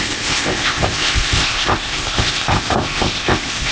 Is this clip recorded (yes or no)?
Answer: no